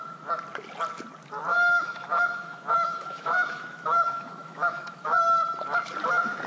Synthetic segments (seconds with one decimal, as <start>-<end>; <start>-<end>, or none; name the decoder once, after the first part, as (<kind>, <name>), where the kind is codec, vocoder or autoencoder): 1.5-5.1 (autoencoder, DAC-VAE)